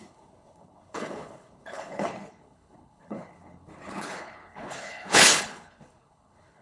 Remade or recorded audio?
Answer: remade